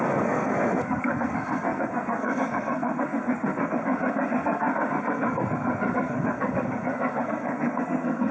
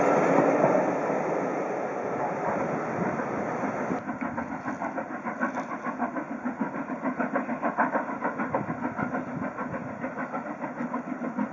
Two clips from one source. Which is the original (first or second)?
second